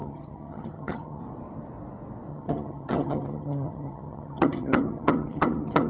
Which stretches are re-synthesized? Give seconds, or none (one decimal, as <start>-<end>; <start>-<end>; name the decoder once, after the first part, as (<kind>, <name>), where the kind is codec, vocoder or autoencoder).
0.0-1.2 (vocoder, HiFi-GAN); 2.3-5.9